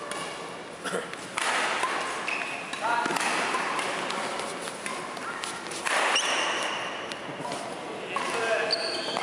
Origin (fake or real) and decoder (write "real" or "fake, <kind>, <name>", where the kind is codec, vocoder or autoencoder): real